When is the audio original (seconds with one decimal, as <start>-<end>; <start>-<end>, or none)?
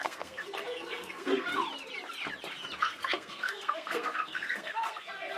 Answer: 1.5-2.8